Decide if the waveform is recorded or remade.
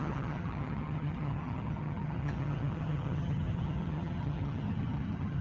remade